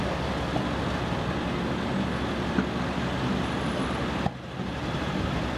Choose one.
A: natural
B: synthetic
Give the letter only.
A